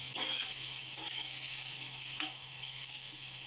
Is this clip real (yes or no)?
no